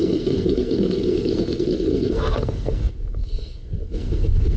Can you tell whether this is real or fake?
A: fake